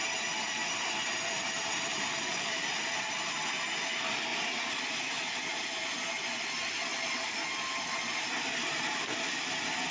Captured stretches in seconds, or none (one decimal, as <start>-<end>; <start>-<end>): 0.0-9.9